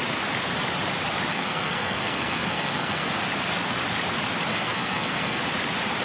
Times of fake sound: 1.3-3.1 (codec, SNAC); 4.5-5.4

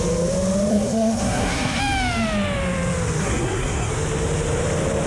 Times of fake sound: 0.7-1.8 (codec, SNAC); 3.2-3.9

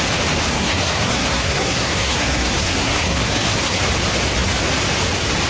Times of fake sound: 0.5-3.8 (codec, SNAC)

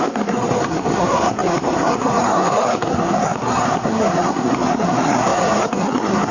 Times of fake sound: 0.0-6.3 (codec, SNAC)

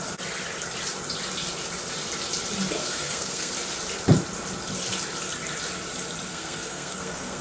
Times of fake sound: 2.8-3.5 (codec, SNAC); 6.3-7.4

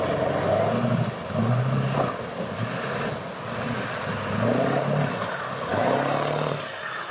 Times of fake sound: none